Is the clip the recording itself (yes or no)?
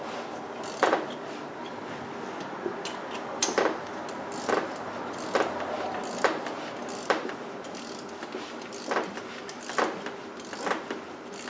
yes